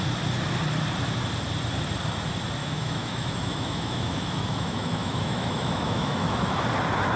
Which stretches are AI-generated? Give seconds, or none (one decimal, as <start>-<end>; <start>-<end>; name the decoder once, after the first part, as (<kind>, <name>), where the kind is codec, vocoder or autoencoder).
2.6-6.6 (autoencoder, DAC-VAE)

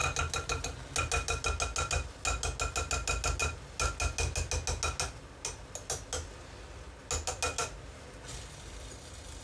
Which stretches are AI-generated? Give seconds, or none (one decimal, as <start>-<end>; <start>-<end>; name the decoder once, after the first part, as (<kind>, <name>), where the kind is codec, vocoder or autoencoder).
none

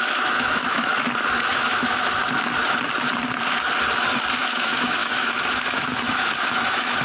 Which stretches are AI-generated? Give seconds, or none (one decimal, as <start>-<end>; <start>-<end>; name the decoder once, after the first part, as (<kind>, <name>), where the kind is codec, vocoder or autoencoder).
0.0-0.9 (autoencoder, DAC-VAE); 1.5-2.2; 4.4-7.0

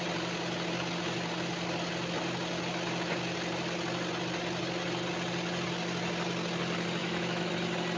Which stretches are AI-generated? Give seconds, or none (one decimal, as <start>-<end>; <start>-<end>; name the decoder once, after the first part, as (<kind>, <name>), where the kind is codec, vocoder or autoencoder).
7.0-7.5 (autoencoder, DAC-VAE)